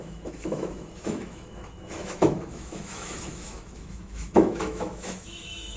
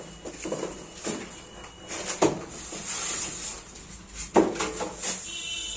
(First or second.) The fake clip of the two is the first